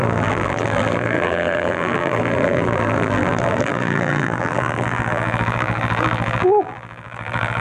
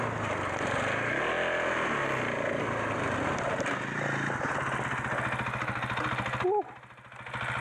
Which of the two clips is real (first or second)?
second